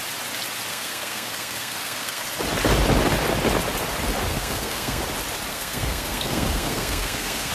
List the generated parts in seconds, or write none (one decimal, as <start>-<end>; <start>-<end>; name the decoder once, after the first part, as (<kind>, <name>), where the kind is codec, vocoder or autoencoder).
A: 0.7-2.2 (codec, SNAC); 4.3-5.0; 5.5-7.5